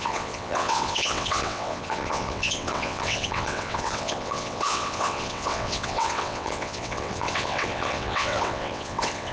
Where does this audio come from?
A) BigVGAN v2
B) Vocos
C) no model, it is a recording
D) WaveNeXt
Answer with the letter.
D